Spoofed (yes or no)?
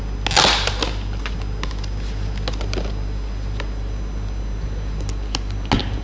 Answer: no